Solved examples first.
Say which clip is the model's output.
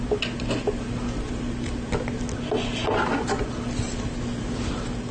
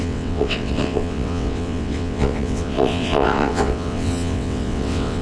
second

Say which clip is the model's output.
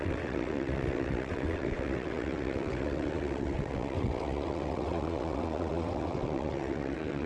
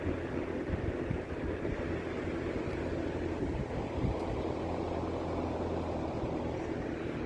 first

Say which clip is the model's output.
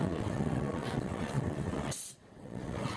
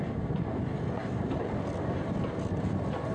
first